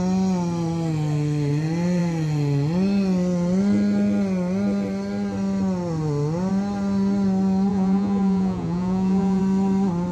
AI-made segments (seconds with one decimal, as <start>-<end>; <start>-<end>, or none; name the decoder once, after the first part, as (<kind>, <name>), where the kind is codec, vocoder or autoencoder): 7.7-9.4 (vocoder, Vocos)